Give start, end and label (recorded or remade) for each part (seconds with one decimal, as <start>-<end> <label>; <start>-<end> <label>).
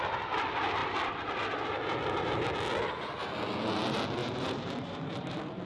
0.0-4.2 recorded; 4.2-5.7 remade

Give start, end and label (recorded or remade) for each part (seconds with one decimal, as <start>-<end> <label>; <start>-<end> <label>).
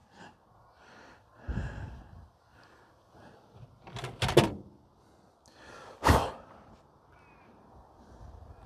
0.0-6.2 recorded; 6.2-7.7 remade; 7.7-8.7 recorded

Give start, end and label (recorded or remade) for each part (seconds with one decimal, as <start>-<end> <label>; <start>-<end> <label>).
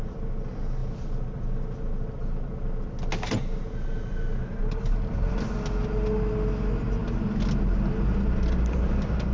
0.0-9.3 recorded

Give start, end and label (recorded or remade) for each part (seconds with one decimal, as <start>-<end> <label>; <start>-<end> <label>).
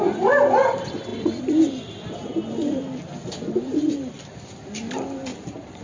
0.0-5.3 recorded; 5.3-5.8 remade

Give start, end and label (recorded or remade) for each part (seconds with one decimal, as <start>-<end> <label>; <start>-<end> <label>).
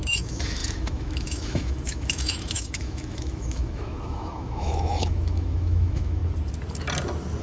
0.0-6.2 remade; 6.2-7.4 recorded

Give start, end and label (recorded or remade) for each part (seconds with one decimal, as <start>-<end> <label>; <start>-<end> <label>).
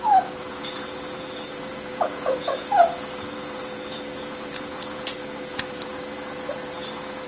0.0-7.3 remade